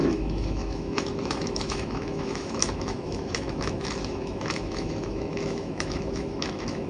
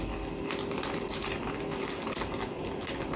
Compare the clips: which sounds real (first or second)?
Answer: second